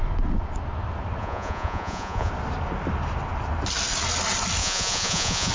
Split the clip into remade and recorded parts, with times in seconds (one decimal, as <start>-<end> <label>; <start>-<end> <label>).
0.0-1.2 recorded; 1.2-2.3 remade; 2.3-4.6 recorded; 4.6-5.5 remade